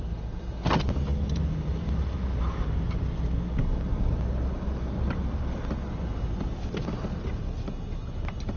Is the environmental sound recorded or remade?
recorded